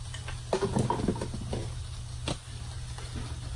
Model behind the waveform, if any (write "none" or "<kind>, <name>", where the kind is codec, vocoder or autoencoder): none